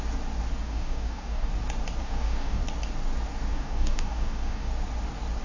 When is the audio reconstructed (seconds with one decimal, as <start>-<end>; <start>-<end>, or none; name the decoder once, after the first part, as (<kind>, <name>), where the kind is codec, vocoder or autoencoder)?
0.6-1.5 (codec, DAC); 2.0-2.6; 3.5-4.7